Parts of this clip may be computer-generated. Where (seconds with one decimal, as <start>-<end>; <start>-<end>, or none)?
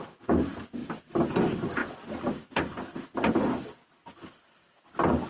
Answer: none